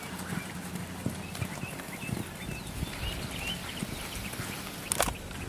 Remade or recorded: recorded